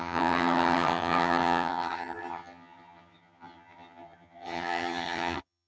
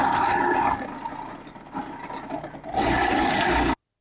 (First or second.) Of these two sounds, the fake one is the first